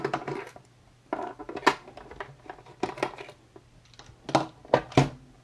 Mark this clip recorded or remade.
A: recorded